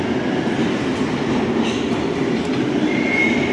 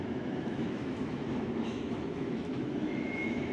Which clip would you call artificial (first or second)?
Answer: second